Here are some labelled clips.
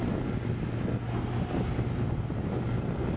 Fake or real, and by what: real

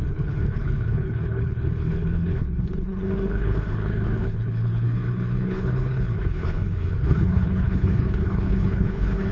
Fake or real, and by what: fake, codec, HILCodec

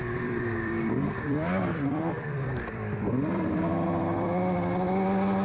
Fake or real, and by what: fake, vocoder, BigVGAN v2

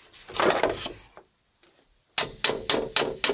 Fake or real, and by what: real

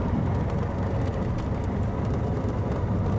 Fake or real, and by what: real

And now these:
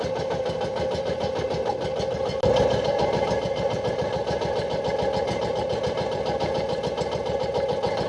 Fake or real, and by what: real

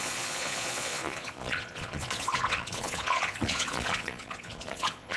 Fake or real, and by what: fake, vocoder, Vocos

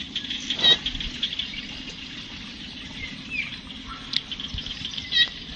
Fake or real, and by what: real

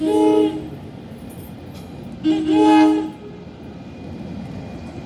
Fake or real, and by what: real